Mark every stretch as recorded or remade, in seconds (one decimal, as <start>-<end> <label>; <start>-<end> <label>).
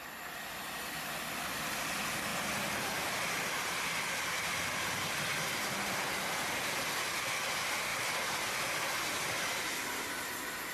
0.0-10.7 recorded